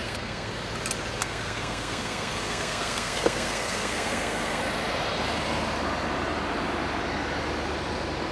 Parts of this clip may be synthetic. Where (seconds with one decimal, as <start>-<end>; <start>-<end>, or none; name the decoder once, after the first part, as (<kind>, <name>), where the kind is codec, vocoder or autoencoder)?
0.0-0.5 (codec, SNAC); 1.2-4.6